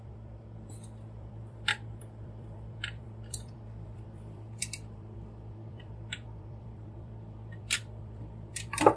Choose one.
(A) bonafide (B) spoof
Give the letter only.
B